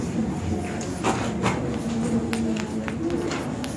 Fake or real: real